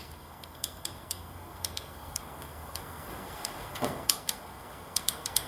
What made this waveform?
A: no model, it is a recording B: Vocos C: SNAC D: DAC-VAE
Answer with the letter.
C